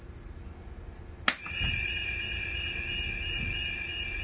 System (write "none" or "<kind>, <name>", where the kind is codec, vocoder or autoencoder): none